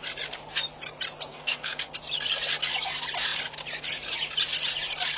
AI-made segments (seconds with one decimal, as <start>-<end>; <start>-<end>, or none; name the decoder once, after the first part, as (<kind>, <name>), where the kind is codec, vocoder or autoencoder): 1.3-1.9 (codec, SNAC)